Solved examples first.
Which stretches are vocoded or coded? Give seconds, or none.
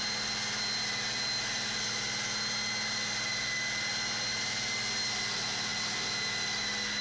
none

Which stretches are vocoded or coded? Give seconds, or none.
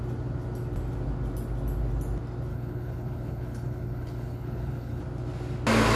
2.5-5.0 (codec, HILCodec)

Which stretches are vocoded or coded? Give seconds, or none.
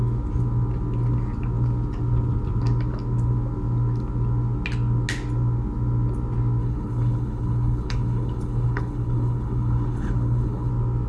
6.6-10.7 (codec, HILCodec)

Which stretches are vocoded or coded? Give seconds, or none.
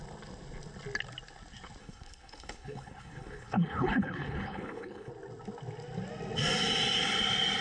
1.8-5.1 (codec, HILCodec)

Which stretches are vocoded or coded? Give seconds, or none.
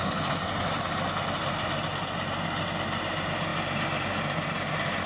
none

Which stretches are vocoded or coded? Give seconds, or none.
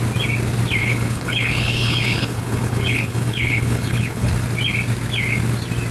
0.8-4.3 (codec, HILCodec)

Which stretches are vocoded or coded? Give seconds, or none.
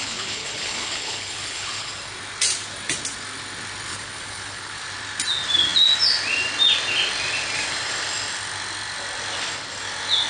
0.0-1.9 (codec, HILCodec); 3.9-4.8